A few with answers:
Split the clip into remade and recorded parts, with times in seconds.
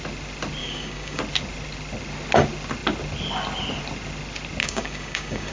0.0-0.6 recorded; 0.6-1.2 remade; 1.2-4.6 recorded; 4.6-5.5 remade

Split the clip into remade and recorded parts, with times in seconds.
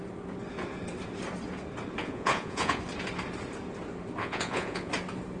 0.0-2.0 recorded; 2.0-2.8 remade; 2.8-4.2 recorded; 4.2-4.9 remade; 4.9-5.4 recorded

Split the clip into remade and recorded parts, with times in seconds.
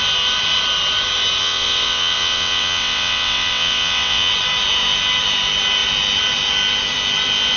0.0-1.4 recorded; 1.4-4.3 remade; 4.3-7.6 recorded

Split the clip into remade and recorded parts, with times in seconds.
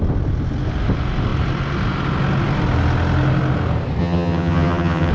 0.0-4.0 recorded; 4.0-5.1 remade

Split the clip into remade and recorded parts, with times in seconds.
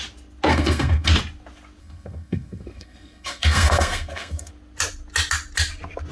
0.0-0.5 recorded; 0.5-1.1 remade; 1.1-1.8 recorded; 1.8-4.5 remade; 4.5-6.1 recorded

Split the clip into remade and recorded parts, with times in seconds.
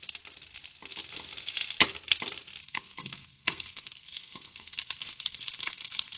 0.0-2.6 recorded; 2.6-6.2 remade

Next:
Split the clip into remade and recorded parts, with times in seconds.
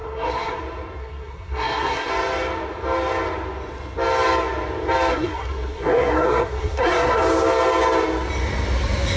0.0-0.6 remade; 0.6-1.0 recorded; 1.0-2.1 remade; 2.1-5.1 recorded; 5.1-7.2 remade; 7.2-9.2 recorded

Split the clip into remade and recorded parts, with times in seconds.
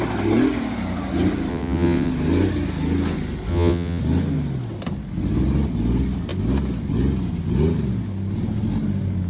0.0-1.5 recorded; 1.5-2.1 remade; 2.1-3.5 recorded; 3.5-4.0 remade; 4.0-9.3 recorded